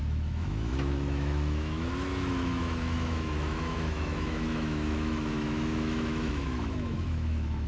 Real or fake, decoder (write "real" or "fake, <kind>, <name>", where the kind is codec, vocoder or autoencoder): fake, autoencoder, DAC-VAE